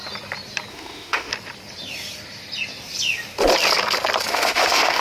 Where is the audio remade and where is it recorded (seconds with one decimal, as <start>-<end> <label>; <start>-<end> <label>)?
0.0-0.7 recorded; 0.7-1.3 remade; 1.3-4.3 recorded; 4.3-5.0 remade